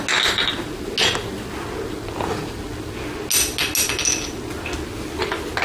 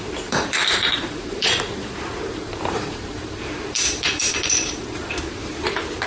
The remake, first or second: second